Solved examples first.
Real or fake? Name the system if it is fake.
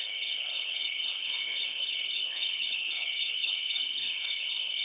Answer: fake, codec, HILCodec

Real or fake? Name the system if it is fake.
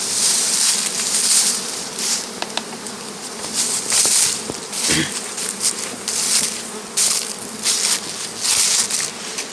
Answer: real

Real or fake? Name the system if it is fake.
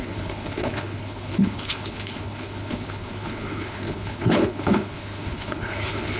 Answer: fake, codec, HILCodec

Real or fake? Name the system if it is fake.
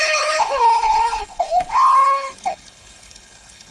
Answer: fake, codec, HILCodec